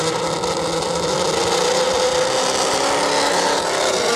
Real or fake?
real